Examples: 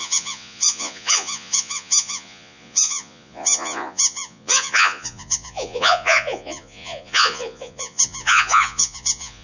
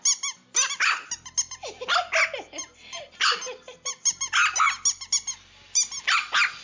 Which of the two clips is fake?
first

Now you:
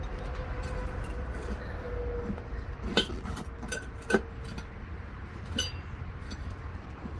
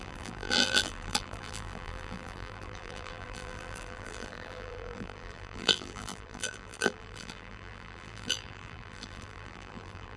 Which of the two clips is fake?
second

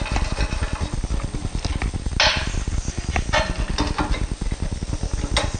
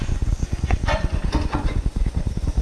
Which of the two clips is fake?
second